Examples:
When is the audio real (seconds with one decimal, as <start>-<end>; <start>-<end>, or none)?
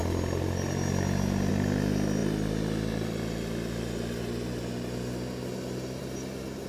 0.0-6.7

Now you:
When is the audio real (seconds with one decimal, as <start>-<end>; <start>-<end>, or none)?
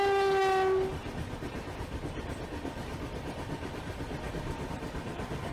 0.0-5.5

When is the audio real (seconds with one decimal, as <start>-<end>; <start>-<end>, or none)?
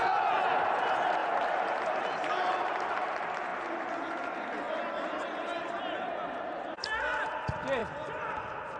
0.0-7.8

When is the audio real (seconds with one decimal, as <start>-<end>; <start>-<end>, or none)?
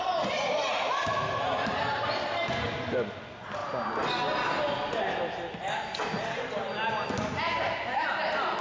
0.0-8.6